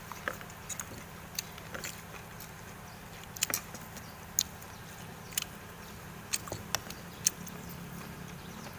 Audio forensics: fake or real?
real